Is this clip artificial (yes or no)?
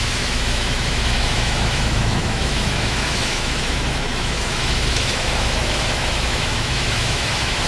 yes